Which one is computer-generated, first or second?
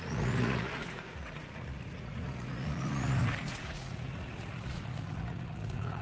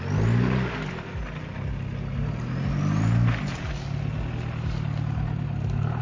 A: first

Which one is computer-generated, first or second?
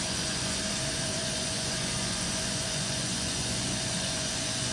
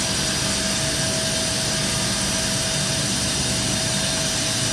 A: first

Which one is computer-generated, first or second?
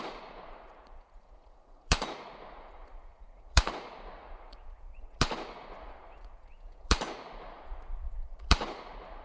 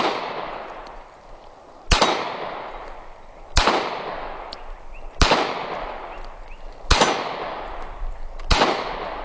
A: first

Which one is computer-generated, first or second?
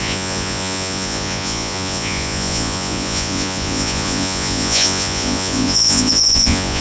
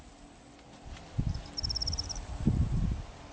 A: first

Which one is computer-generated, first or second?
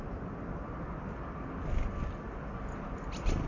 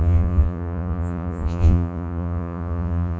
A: second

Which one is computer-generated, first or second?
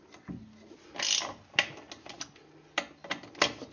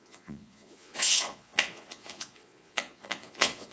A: second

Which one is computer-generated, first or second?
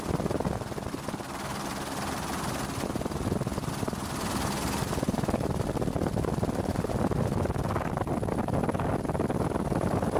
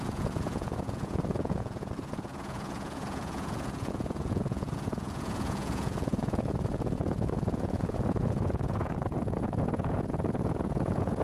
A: second